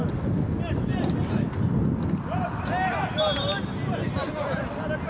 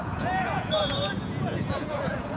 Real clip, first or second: first